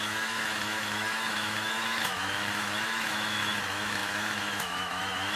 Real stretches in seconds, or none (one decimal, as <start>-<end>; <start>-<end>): none